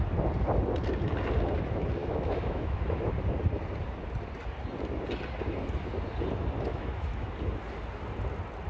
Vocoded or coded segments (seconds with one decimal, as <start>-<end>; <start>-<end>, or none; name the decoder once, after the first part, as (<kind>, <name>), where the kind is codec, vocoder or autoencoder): 2.0-3.1 (autoencoder, DAC-VAE); 6.7-7.3